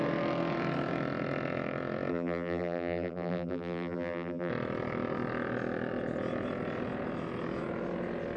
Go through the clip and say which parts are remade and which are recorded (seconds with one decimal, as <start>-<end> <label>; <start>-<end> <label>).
0.0-2.1 recorded; 2.1-4.5 remade; 4.5-8.4 recorded